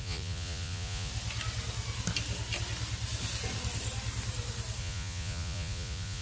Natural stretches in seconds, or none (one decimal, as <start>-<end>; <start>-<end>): 1.1-4.8